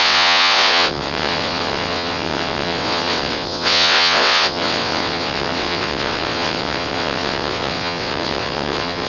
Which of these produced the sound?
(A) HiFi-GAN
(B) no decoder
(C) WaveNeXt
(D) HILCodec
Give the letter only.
C